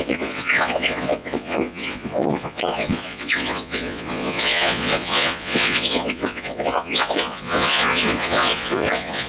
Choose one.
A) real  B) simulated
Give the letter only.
B